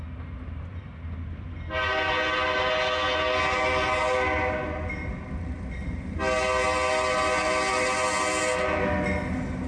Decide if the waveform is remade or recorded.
recorded